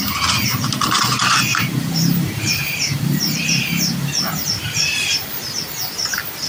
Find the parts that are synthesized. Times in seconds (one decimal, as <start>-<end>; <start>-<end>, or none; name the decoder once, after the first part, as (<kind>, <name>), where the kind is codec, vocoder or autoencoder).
1.5-5.4 (vocoder, BigVGAN v2)